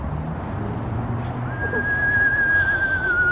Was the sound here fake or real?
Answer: real